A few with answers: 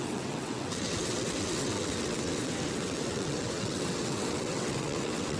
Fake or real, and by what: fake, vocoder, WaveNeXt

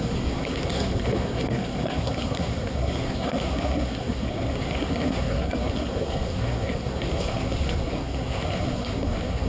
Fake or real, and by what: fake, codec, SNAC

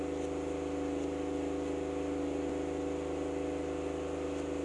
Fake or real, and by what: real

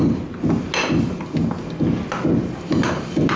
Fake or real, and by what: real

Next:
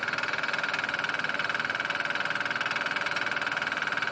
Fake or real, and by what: real